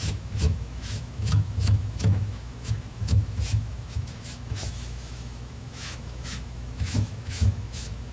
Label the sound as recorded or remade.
remade